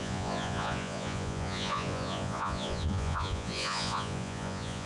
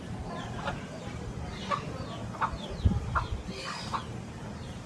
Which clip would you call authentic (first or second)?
second